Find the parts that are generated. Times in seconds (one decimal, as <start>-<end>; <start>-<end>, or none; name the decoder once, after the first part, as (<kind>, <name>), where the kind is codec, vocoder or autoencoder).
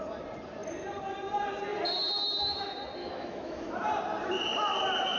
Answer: 3.0-3.9 (autoencoder, DAC-VAE)